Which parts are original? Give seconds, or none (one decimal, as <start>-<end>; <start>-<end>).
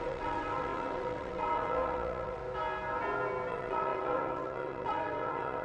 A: 2.4-3.5